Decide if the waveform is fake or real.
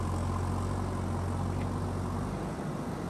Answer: real